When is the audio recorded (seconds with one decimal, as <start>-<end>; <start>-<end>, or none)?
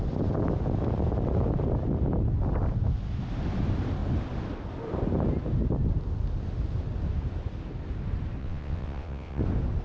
0.0-8.4; 9.4-9.8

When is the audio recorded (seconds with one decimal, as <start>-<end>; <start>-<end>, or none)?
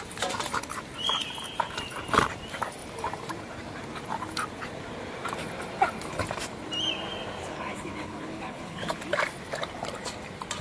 0.0-7.4; 9.0-10.6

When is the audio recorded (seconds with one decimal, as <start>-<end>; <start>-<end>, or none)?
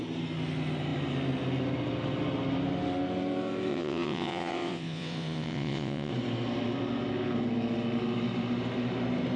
0.0-3.7; 6.1-9.4